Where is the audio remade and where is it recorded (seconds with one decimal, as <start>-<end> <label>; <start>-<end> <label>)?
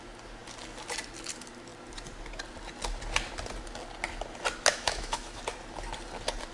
0.0-4.7 recorded; 4.7-5.4 remade; 5.4-6.5 recorded